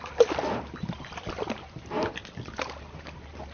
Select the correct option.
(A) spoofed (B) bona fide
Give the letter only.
B